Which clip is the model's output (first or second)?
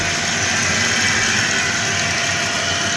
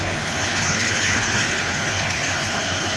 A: second